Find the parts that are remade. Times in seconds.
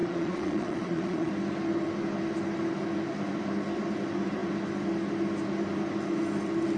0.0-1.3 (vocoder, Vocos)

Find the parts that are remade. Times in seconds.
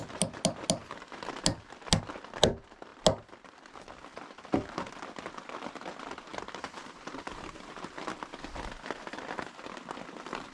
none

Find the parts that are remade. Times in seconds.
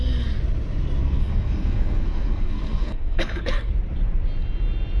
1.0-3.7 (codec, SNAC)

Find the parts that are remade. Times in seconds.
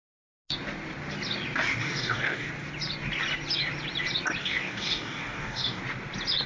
1.8-2.5 (codec, DAC); 4.4-5.8